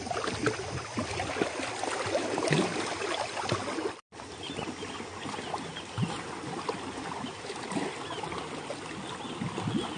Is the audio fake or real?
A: real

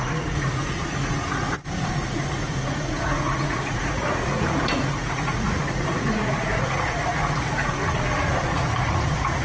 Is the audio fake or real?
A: fake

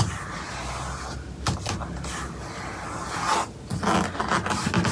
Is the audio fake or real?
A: real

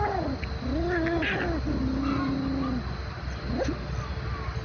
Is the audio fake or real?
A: real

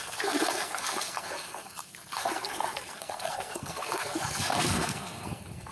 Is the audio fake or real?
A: fake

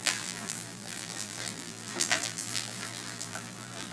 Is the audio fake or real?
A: fake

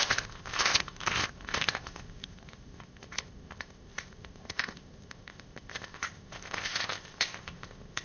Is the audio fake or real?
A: fake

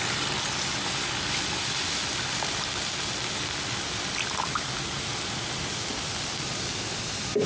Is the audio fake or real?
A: real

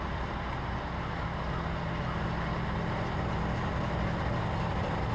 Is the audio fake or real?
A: real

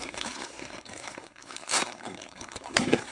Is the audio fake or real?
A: fake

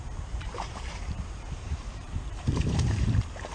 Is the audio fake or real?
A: fake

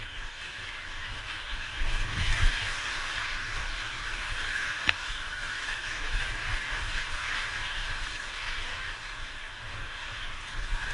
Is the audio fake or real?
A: fake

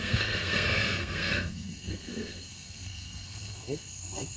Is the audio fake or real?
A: fake